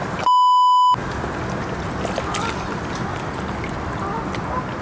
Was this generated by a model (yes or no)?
no